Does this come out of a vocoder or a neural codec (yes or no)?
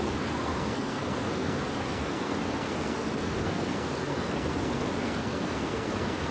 yes